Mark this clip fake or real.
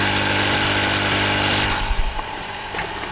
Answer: fake